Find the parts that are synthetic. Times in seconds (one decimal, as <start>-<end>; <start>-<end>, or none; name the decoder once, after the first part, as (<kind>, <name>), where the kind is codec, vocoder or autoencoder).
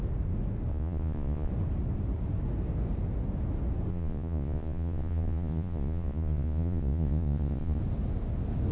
0.7-1.5 (vocoder, Vocos); 3.9-7.8